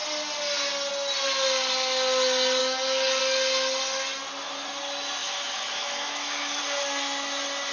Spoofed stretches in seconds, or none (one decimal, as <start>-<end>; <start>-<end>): 2.6-3.2; 5.2-6.6